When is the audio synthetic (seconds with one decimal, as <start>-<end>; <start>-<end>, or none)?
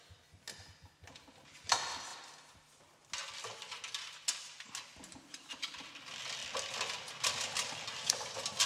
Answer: none